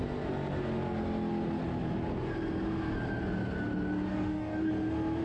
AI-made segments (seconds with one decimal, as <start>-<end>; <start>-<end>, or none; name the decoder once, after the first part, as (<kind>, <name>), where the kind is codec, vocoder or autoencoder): 4.1-4.7 (codec, DAC)